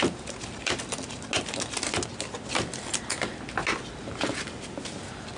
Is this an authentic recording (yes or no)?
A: yes